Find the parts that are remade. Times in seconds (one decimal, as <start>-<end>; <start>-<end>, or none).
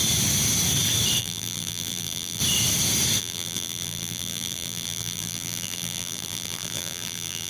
1.2-2.4; 3.2-7.5